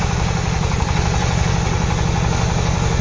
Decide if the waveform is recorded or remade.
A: recorded